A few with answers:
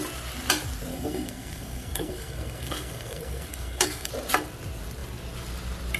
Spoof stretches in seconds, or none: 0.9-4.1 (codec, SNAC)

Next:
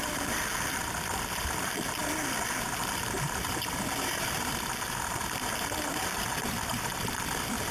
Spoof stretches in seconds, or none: none

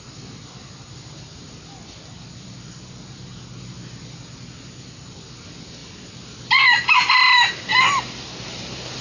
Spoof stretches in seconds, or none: none

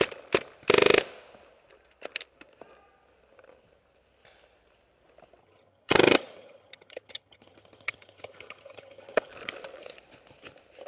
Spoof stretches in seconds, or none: 5.4-9.3 (vocoder, HiFi-GAN)

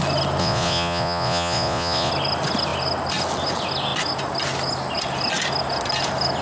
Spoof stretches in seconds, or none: 0.4-2.1 (vocoder, Vocos)

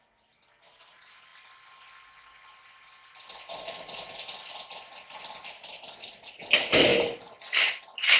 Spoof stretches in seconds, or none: 6.9-8.2 (vocoder, BigVGAN v2)

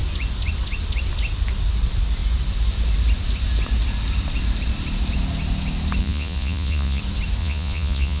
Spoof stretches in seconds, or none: 6.0-7.0 (vocoder, Vocos); 7.4-8.2